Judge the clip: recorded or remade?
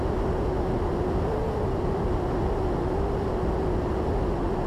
recorded